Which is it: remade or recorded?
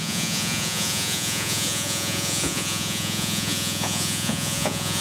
remade